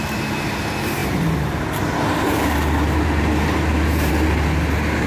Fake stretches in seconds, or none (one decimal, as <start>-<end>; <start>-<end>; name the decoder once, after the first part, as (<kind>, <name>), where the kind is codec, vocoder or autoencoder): none